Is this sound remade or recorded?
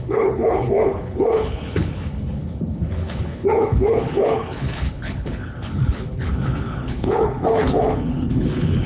remade